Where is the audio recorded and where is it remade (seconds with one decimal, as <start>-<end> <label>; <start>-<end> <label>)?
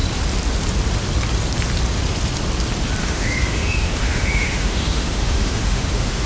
0.0-3.0 recorded; 3.0-6.3 remade